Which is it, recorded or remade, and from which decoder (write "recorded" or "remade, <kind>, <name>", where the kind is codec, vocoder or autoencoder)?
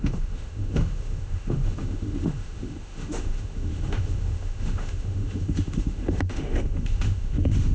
remade, autoencoder, DAC-VAE